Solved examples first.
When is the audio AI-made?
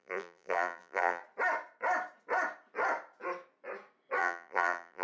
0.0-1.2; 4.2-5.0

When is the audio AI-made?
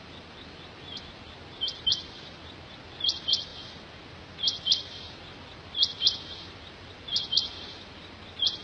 none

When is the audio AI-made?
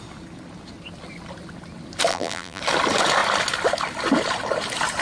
2.1-2.6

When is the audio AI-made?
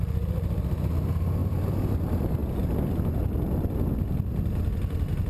1.4-2.0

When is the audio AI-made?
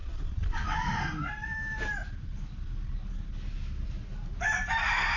0.0-3.1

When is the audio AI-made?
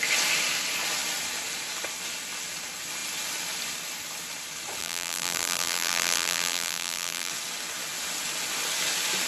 4.8-7.3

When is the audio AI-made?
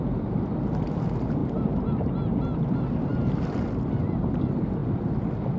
none